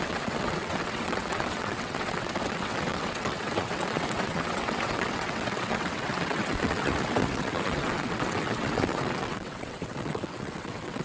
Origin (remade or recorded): remade